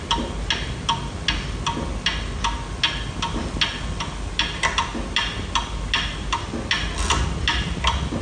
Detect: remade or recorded recorded